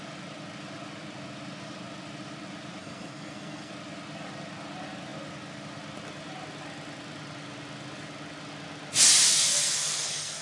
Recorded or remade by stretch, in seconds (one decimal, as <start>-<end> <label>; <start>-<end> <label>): 0.0-2.8 recorded; 2.8-3.7 remade; 3.7-9.3 recorded; 9.3-10.4 remade